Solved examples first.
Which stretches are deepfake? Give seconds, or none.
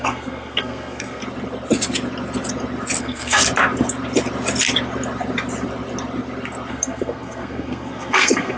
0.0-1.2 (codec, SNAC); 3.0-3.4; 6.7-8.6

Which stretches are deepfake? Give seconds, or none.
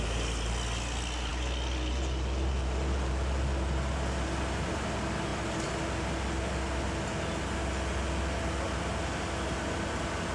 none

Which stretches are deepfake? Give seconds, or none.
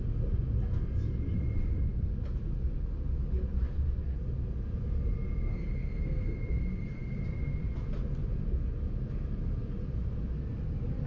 none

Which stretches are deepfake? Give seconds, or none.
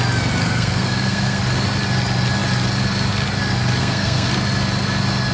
0.4-1.4 (codec, SNAC); 3.8-4.3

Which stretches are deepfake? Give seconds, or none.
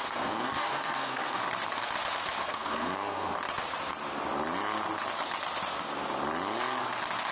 0.0-1.4 (codec, SNAC); 2.4-3.3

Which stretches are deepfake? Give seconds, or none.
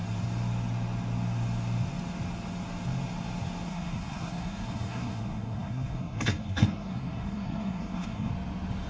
3.7-8.3 (codec, SNAC)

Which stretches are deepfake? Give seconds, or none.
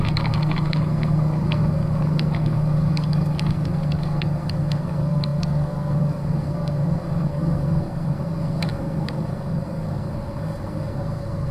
0.0-11.5 (codec, SNAC)